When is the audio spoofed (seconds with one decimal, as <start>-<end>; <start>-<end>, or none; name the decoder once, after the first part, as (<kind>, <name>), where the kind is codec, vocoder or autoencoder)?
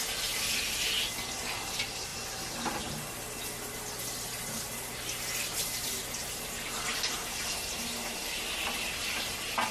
2.1-2.9 (vocoder, BigVGAN v2); 6.9-8.5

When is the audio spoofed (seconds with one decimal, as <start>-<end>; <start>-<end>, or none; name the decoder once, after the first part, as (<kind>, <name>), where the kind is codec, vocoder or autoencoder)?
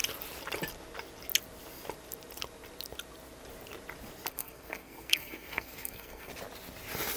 4.3-6.3 (codec, SNAC)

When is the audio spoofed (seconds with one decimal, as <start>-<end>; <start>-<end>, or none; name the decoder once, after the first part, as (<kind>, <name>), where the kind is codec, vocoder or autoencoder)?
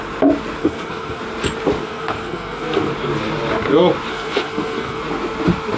0.6-1.2 (codec, SNAC); 1.8-2.9; 4.1-5.0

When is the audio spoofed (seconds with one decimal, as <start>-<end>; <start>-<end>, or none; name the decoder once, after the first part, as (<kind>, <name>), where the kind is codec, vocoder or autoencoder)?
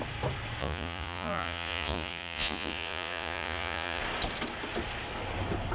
0.6-4.0 (vocoder, Vocos)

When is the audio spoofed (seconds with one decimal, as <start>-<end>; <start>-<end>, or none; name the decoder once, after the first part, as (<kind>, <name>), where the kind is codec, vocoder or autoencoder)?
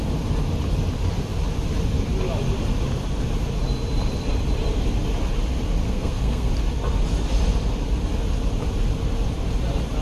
5.8-6.5 (codec, SNAC)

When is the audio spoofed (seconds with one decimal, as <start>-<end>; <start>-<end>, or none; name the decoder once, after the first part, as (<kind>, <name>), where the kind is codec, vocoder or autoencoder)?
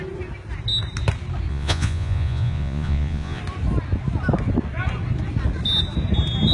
1.5-3.4 (vocoder, Vocos)